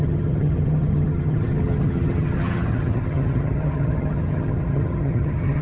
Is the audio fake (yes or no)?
yes